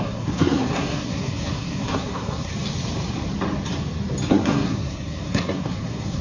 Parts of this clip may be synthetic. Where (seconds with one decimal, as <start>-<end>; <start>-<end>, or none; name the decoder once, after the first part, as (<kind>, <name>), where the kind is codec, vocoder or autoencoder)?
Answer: 0.0-2.5 (codec, SNAC); 4.3-6.2